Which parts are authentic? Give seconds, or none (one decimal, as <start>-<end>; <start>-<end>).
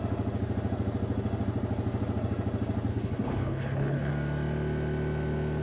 0.0-2.9; 4.1-5.6